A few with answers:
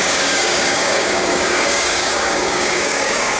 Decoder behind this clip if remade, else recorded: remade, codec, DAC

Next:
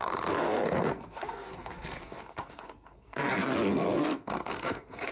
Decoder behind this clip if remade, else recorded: remade, codec, SNAC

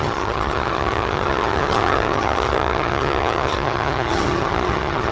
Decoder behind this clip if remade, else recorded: remade, vocoder, HiFi-GAN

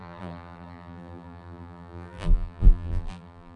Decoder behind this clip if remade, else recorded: remade, vocoder, BigVGAN v2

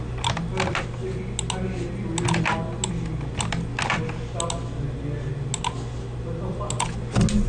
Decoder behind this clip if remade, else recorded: recorded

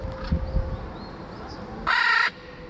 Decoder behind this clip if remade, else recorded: recorded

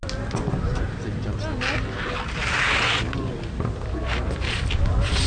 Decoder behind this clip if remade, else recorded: recorded